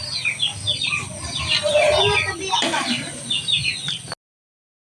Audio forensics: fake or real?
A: real